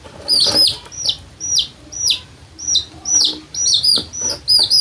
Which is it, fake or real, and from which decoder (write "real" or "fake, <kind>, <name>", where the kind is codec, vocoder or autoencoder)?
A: fake, vocoder, BigVGAN v2